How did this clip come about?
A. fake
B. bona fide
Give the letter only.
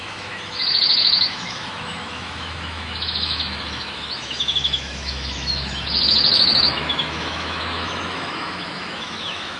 A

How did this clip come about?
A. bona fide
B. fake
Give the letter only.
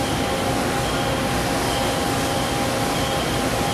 A